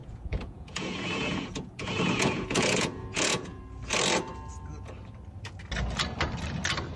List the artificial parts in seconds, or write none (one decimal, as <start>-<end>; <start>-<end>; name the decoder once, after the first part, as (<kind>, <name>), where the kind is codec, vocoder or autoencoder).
0.0-3.6 (vocoder, Vocos)